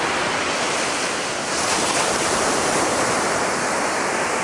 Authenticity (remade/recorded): remade